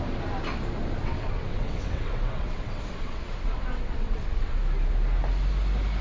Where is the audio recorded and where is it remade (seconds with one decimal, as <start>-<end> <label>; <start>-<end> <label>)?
0.0-1.0 recorded; 1.0-4.6 remade; 4.6-6.0 recorded